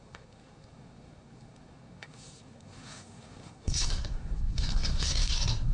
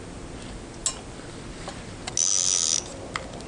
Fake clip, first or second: first